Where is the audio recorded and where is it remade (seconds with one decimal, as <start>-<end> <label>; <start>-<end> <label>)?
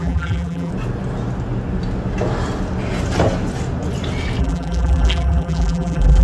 0.0-0.7 remade; 0.7-4.4 recorded; 4.4-6.2 remade